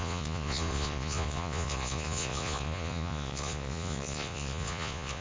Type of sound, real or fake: fake